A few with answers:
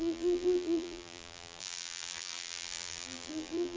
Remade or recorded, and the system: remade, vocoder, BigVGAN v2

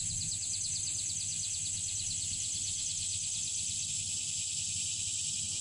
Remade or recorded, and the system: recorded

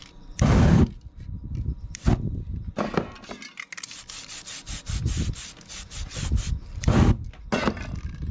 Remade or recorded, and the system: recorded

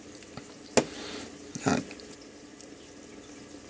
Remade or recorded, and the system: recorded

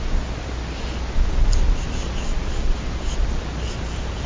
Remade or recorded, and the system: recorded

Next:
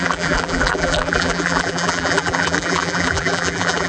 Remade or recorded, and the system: remade, vocoder, BigVGAN v2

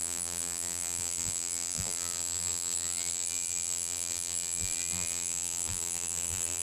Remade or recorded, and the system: remade, vocoder, BigVGAN v2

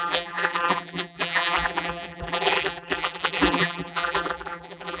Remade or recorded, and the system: remade, vocoder, BigVGAN v2